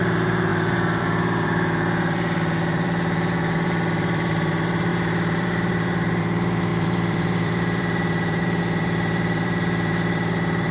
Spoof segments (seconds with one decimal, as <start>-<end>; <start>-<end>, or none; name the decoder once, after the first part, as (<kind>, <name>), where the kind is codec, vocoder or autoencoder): 0.0-10.7 (vocoder, BigVGAN v2)